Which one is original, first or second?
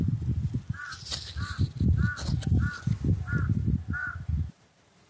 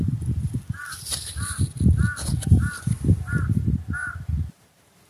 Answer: first